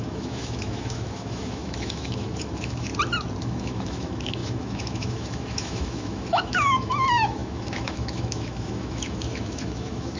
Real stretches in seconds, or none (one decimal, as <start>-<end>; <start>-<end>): 2.9-3.4